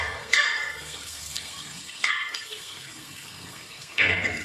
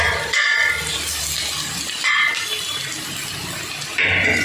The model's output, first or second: first